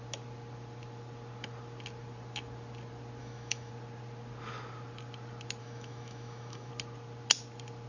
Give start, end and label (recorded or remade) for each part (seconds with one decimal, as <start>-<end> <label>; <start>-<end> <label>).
0.0-3.2 recorded; 3.2-3.7 remade; 3.7-5.6 recorded; 5.6-6.7 remade; 6.7-7.9 recorded